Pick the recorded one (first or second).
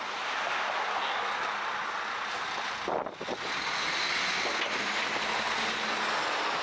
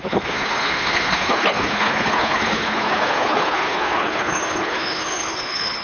first